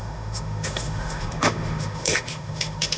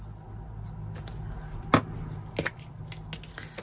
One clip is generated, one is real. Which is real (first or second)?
second